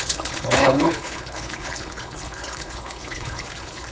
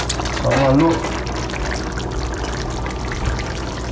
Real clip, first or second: second